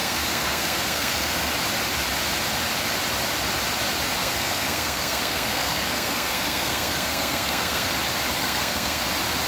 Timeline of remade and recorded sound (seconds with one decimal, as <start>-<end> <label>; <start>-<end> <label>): 0.0-1.5 remade; 1.5-4.2 recorded; 4.2-7.9 remade; 7.9-8.4 recorded; 8.4-9.0 remade; 9.0-9.5 recorded